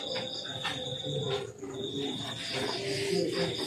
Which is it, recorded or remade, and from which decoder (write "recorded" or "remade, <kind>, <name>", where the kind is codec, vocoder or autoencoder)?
recorded